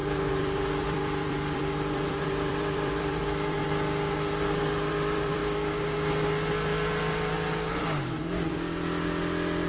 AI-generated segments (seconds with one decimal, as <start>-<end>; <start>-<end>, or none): 0.0-3.6; 4.9-5.4